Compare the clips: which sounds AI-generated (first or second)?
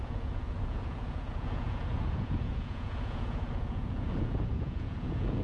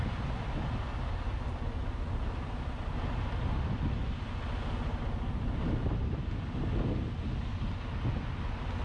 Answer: first